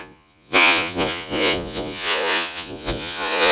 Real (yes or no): no